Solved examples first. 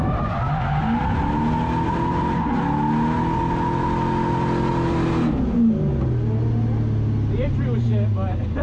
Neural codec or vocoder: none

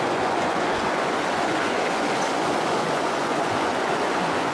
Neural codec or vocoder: vocoder, Vocos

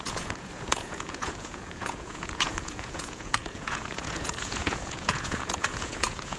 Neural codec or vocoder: vocoder, Vocos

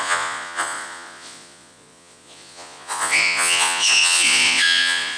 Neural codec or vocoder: vocoder, Vocos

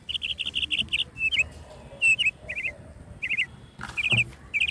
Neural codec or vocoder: none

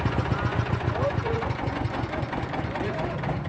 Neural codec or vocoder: vocoder, Vocos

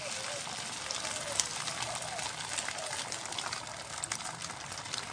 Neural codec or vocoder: none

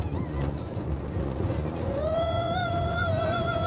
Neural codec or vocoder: vocoder, Vocos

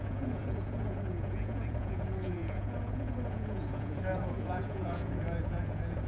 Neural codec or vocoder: vocoder, Vocos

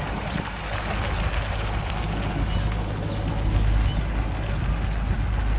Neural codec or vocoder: none